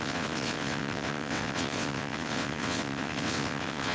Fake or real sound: fake